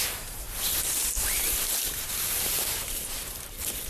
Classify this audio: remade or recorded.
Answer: remade